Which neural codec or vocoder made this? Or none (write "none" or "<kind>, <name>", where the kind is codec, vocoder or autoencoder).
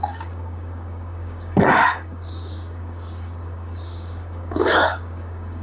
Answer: codec, DAC